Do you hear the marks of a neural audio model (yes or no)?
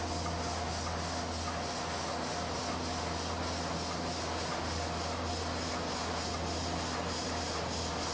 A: no